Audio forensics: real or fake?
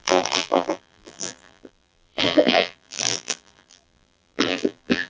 fake